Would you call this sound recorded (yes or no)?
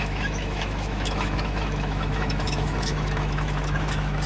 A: no